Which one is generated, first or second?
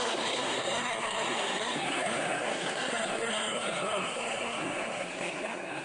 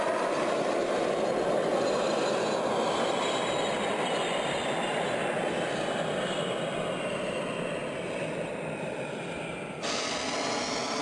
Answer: first